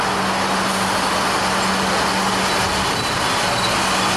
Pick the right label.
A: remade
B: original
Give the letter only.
B